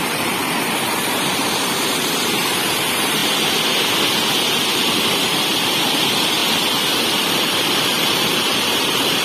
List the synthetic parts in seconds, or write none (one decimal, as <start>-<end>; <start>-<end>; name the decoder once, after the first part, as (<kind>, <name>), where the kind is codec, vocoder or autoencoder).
0.0-3.2 (vocoder, BigVGAN v2); 4.7-6.4; 7.2-9.2